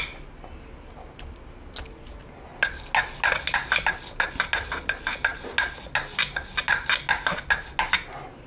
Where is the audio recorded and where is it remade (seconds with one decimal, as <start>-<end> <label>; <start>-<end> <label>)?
0.0-8.5 recorded